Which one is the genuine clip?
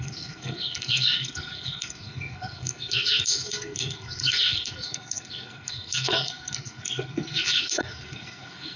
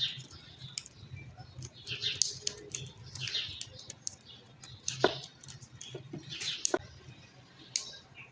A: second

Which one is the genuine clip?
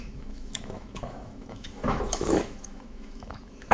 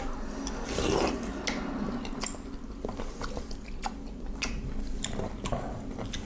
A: second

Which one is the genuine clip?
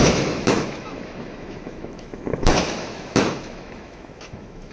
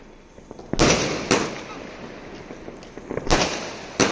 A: second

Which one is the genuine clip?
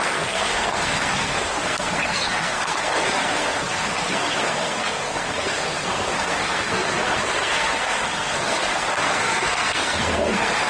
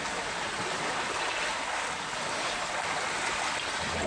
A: second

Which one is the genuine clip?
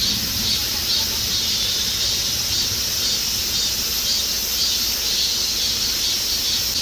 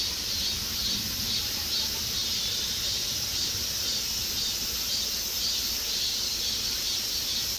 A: first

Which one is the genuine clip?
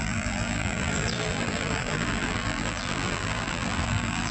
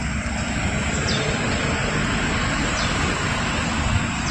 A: second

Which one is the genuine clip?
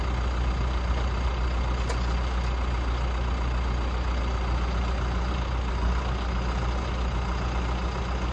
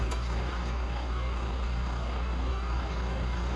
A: first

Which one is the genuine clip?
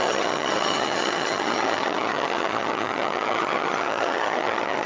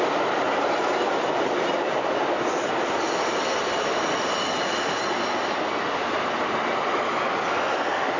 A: second